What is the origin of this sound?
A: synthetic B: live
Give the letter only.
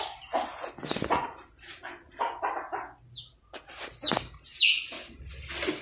B